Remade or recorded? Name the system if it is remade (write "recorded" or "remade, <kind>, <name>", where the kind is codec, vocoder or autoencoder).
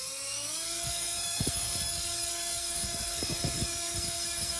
remade, codec, SNAC